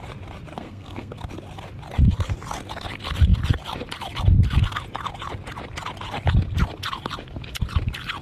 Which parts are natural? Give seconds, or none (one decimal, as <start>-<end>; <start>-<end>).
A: 0.0-0.5; 1.3-8.2